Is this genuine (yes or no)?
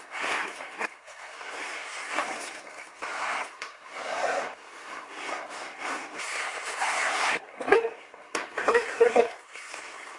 no